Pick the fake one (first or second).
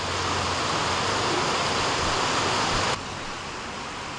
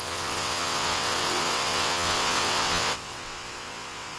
second